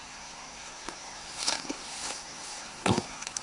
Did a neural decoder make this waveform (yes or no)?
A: yes